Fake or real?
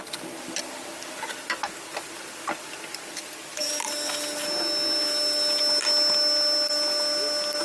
real